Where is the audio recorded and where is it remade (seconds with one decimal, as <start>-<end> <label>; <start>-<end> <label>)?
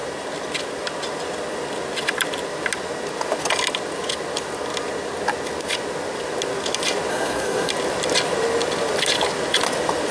0.0-7.1 recorded; 7.1-7.7 remade; 7.7-10.1 recorded